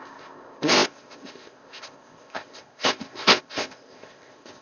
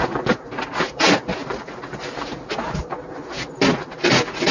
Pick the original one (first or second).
second